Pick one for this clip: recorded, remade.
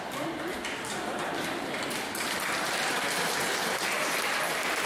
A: recorded